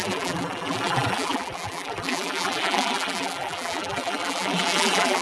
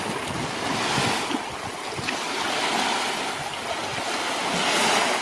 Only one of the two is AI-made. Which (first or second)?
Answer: first